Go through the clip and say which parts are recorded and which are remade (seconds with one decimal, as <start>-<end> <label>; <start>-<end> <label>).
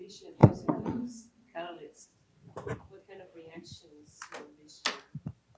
0.0-2.1 remade; 2.1-5.6 recorded